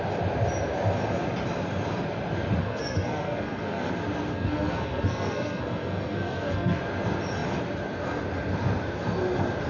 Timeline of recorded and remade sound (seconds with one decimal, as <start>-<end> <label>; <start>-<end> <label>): 0.0-2.6 recorded; 2.6-3.9 remade; 3.9-4.3 recorded; 4.3-6.8 remade; 6.8-9.7 recorded